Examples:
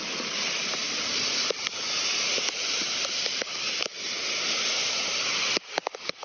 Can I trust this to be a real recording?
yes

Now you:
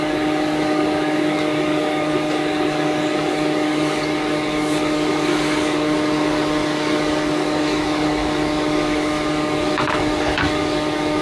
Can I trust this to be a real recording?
no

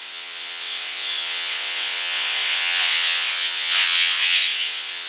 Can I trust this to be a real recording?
no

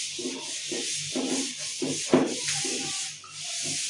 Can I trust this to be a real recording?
yes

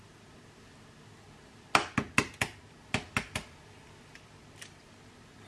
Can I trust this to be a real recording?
yes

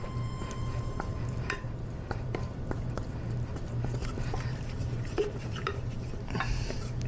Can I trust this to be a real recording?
no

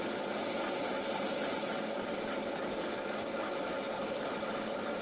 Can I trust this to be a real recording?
yes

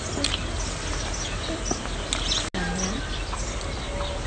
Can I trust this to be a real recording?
yes